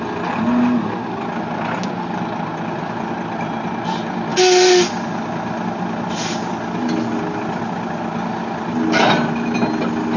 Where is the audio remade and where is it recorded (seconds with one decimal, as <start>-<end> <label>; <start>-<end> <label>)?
0.0-10.2 recorded